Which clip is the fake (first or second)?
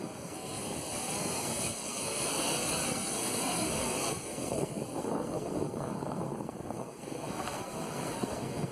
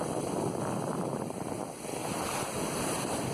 first